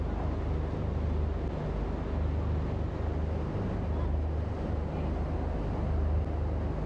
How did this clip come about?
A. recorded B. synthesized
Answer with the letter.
A